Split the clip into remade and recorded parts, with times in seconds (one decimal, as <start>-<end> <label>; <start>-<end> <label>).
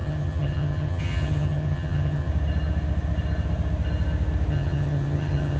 0.0-2.3 remade; 2.3-4.5 recorded; 4.5-5.6 remade